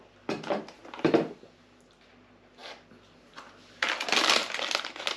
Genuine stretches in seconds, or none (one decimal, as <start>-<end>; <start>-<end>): 0.0-5.2